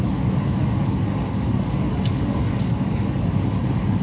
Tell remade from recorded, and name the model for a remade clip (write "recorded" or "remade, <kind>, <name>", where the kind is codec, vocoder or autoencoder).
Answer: remade, codec, DAC